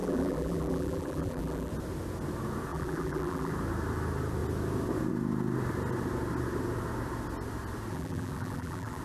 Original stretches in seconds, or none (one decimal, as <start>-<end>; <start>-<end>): 1.7-2.7; 3.5-7.9